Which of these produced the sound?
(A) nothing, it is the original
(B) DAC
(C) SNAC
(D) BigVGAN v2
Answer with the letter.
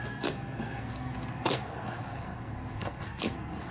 C